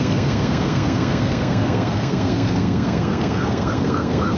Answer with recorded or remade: remade